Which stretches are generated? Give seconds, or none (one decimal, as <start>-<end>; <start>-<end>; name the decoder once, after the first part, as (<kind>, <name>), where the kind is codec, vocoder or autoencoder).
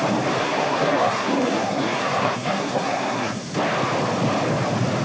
0.4-3.4 (codec, SNAC)